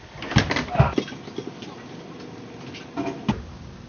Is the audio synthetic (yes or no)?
no